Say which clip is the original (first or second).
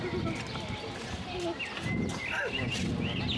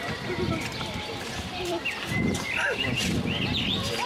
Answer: first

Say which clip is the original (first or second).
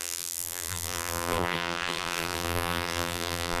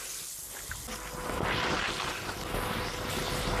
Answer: second